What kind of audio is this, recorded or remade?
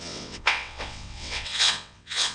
remade